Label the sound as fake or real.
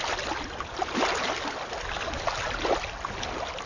real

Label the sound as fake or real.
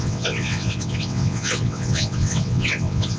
fake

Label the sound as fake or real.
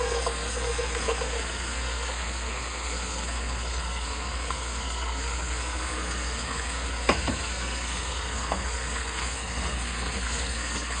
fake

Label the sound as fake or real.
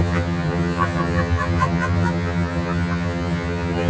fake